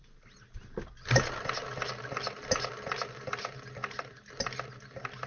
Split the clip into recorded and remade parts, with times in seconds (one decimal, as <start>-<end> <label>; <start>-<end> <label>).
0.0-5.3 recorded